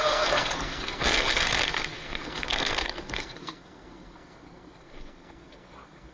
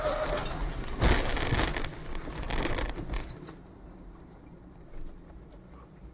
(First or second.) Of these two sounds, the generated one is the first